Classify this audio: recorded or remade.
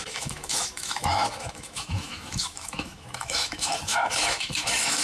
remade